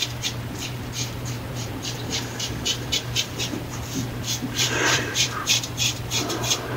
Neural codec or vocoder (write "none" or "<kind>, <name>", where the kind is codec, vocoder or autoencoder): vocoder, BigVGAN v2